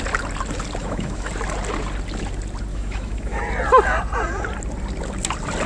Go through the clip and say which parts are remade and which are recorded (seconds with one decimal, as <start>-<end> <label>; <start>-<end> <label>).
0.0-0.8 recorded; 0.8-1.3 remade; 1.3-2.7 recorded; 2.7-3.4 remade; 3.4-5.7 recorded